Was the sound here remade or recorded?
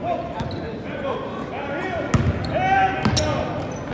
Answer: recorded